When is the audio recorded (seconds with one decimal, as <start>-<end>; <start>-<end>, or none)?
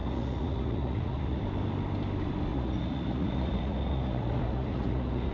1.4-2.5